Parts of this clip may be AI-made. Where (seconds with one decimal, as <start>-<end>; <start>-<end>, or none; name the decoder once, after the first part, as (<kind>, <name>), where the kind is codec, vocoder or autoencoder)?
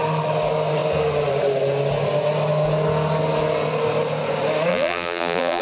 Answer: 4.7-5.6 (vocoder, BigVGAN v2)